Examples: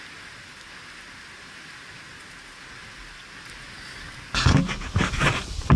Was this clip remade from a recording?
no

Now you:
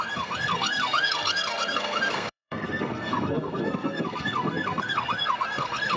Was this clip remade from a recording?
yes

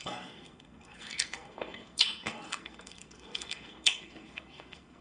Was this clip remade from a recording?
yes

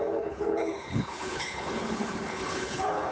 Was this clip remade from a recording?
yes